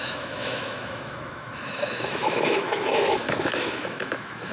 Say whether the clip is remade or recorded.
remade